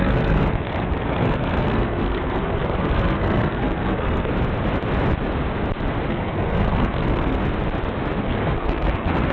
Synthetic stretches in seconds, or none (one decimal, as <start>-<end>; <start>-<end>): 0.0-4.3; 6.1-7.4; 8.2-9.3